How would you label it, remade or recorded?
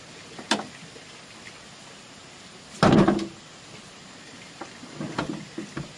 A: recorded